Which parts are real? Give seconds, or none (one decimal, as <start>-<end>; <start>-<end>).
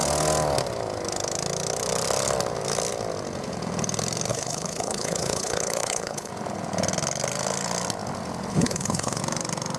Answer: 0.0-4.3; 6.3-8.5; 9.2-9.8